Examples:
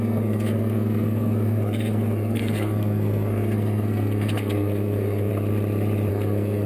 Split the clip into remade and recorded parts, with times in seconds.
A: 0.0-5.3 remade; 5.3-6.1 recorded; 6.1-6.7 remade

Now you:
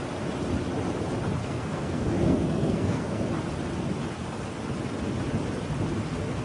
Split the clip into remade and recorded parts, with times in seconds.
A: 0.0-1.4 recorded; 1.4-3.3 remade; 3.3-6.4 recorded

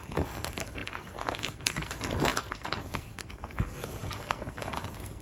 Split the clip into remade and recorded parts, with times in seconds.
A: 0.0-5.2 remade

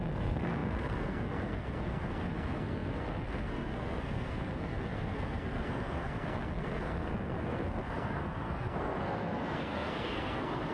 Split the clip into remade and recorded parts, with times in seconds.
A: 0.0-10.7 remade

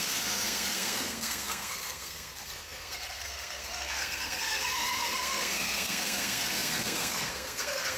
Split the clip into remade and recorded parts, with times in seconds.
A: 0.0-8.0 remade

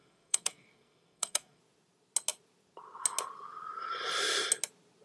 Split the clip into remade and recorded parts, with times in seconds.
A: 0.0-1.6 remade; 1.6-5.0 recorded